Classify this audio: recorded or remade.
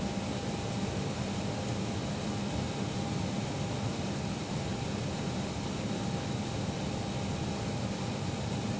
recorded